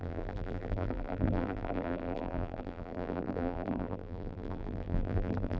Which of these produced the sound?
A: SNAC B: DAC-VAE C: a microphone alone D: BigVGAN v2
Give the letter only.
D